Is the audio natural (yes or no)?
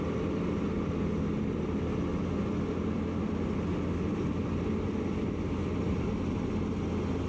yes